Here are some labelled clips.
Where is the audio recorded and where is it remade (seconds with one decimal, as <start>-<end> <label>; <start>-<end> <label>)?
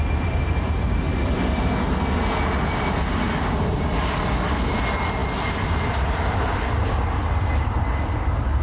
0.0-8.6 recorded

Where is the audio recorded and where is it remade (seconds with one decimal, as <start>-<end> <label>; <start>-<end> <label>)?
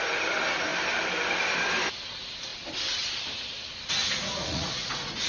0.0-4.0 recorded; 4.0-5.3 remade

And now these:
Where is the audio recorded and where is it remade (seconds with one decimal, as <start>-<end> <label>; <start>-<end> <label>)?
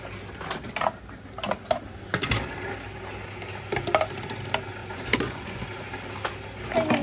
0.0-4.8 recorded; 4.8-5.6 remade; 5.6-7.0 recorded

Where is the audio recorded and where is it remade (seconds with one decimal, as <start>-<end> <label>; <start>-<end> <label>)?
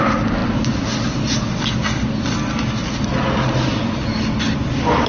0.0-5.1 recorded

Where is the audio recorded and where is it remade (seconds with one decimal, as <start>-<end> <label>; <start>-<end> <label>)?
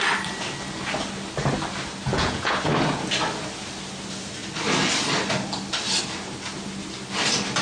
0.0-2.1 recorded; 2.1-2.7 remade; 2.7-7.6 recorded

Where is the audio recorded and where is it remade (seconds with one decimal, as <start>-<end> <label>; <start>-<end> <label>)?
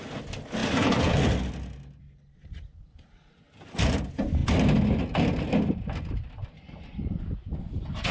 0.0-8.1 recorded